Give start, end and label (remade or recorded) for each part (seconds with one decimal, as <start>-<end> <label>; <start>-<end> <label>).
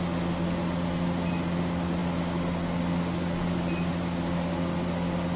0.0-5.4 recorded